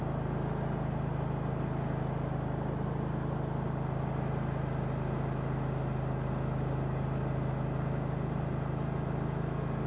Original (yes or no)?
yes